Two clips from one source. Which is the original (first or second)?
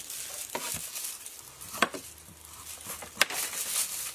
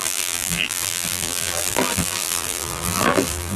first